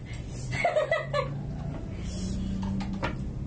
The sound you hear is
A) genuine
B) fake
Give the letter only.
A